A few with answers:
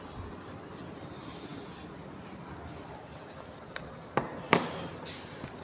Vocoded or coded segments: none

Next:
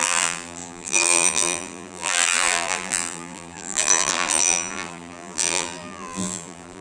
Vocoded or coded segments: 0.0-6.8

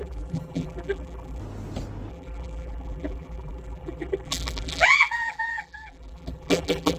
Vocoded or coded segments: 0.0-1.4; 2.1-7.0

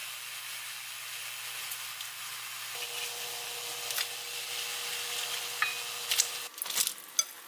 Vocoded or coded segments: none

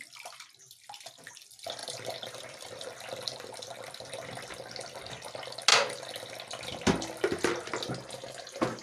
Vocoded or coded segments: 1.8-2.8

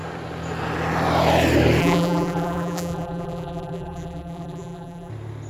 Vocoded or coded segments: 1.8-5.1

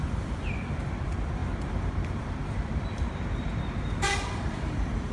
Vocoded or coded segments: 0.0-5.1

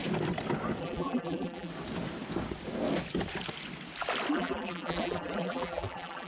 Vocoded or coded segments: 0.8-1.7; 4.3-6.3